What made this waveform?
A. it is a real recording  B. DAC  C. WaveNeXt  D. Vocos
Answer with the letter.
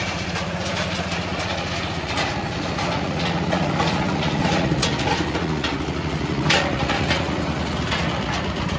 D